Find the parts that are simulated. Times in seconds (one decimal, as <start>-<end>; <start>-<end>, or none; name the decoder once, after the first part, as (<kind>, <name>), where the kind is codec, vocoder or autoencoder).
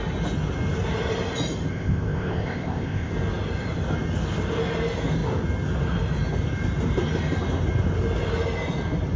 1.7-3.1 (codec, ZipCodec)